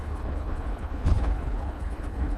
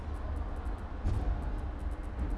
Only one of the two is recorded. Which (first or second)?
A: second